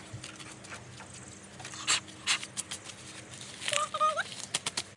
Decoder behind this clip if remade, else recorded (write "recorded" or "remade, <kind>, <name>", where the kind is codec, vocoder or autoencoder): recorded